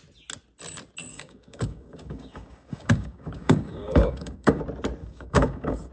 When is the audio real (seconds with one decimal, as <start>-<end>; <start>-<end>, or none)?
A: 0.0-1.1; 4.6-5.0